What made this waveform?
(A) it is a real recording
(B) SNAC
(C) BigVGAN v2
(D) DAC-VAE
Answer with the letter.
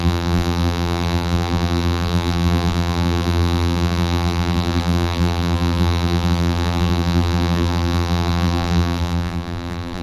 C